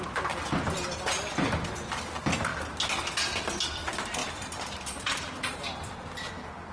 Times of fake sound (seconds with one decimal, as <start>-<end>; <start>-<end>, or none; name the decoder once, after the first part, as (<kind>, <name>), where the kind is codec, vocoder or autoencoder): 4.2-5.6 (vocoder, BigVGAN v2)